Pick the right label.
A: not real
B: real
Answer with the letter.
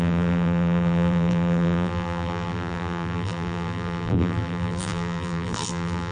A